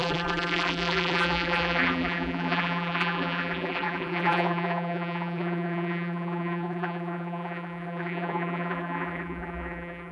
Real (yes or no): no